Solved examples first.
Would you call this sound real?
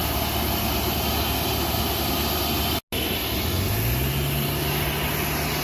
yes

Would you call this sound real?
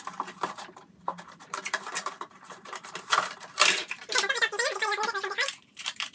no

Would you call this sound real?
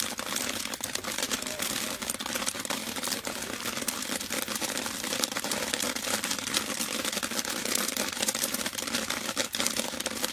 no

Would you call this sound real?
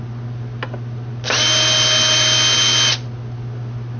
yes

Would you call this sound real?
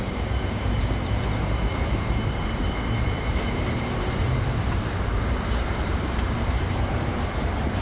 no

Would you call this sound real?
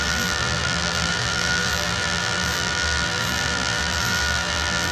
no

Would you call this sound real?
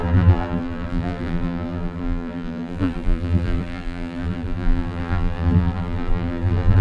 no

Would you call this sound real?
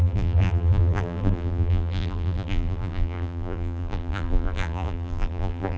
no